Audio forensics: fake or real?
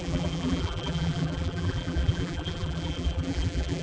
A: fake